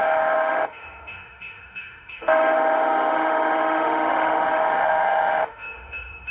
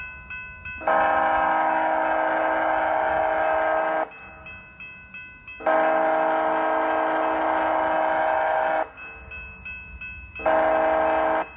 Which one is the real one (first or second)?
second